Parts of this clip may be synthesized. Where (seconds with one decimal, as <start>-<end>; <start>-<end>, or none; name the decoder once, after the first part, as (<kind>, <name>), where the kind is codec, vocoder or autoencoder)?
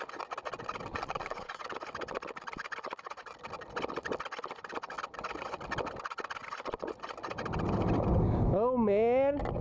0.9-1.6 (vocoder, Vocos)